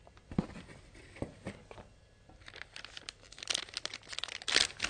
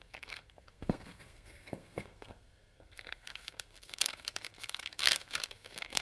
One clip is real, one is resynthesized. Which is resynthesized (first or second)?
second